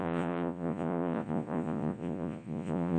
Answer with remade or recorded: remade